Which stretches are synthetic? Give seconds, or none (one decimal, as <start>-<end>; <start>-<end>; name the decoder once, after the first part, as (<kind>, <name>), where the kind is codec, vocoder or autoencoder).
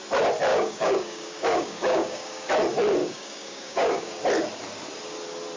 0.5-2.5 (codec, DAC); 3.0-4.2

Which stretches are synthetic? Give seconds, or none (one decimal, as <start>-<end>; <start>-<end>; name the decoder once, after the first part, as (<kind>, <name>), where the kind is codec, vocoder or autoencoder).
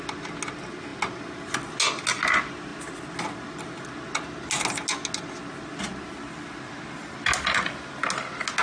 none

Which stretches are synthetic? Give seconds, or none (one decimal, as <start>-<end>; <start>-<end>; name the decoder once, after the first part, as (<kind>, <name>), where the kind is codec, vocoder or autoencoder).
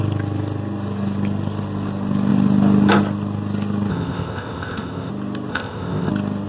3.9-5.1 (codec, ZipCodec); 5.5-6.1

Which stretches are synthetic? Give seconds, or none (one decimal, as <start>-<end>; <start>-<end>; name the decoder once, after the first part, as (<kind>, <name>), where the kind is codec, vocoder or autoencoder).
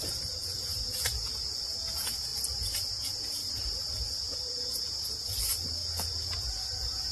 0.0-2.3 (vocoder, Vocos); 2.9-3.4; 4.2-7.1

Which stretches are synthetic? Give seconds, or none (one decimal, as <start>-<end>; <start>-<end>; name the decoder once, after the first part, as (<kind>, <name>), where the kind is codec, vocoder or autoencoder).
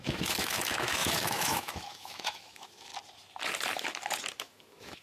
0.0-2.9 (autoencoder, DAC-VAE); 4.4-5.0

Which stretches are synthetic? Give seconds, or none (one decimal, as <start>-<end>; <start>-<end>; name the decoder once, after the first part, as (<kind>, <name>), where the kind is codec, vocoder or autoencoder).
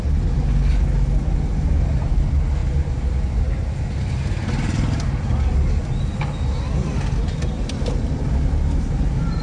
none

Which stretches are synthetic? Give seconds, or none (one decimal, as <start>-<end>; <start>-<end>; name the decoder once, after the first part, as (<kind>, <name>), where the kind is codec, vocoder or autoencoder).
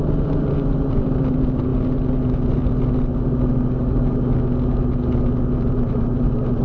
0.0-1.7 (vocoder, BigVGAN v2); 5.7-6.6